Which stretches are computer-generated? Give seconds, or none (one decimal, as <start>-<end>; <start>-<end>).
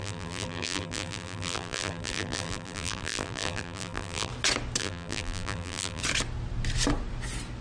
0.0-4.3; 4.8-6.0